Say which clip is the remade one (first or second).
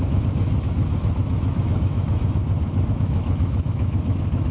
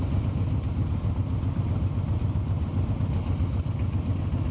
first